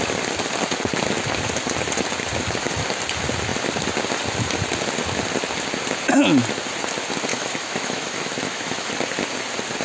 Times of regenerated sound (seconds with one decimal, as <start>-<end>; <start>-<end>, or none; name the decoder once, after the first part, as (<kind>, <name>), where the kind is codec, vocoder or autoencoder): 7.3-8.9 (autoencoder, DAC-VAE)